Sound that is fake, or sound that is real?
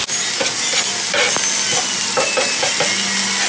real